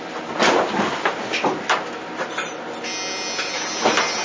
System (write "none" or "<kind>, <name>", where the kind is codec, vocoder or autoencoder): none